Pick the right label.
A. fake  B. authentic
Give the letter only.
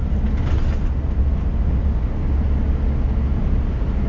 B